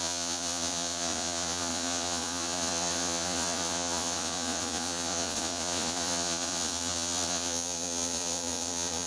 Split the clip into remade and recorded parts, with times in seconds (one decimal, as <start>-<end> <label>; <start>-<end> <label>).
0.0-9.1 remade